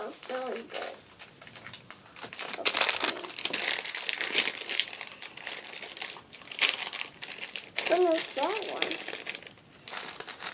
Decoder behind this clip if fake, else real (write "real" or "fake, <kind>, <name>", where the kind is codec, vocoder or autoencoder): real